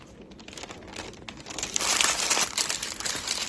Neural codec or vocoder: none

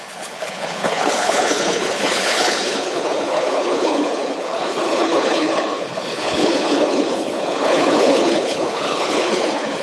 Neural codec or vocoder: codec, HILCodec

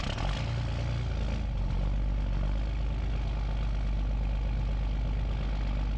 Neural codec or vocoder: none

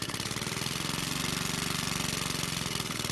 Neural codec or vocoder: none